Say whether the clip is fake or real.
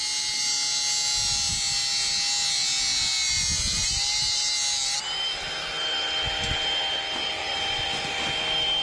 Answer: real